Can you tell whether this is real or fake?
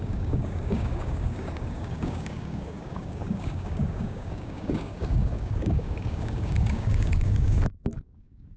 fake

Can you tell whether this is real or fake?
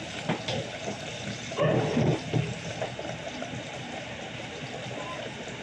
real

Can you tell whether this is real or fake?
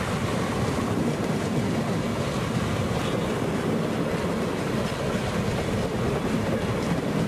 real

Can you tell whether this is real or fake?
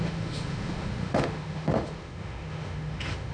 fake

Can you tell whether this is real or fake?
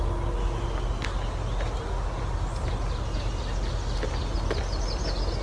real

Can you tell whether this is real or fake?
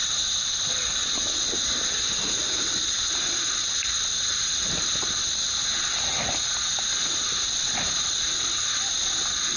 real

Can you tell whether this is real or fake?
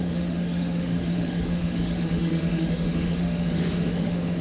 fake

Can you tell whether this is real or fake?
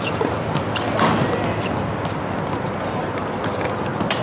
real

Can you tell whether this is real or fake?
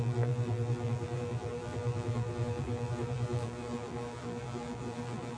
fake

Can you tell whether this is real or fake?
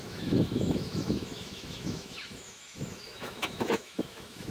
fake